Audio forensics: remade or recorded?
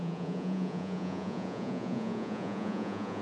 remade